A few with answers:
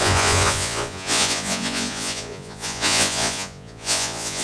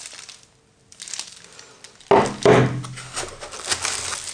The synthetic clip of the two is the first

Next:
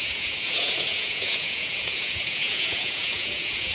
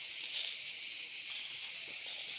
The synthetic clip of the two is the first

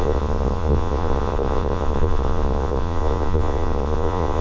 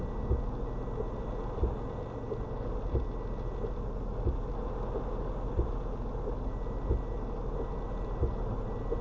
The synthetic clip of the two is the first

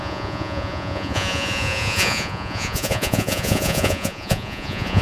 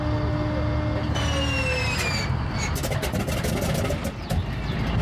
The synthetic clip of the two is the first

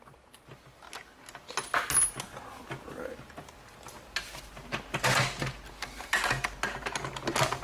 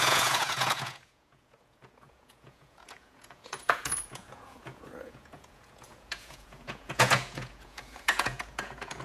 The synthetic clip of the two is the second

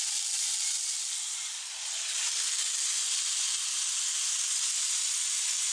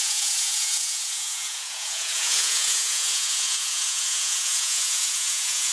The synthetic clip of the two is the second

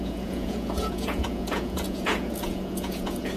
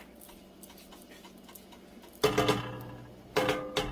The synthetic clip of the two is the first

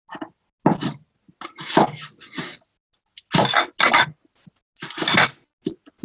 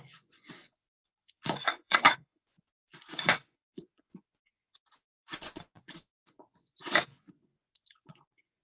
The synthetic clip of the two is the second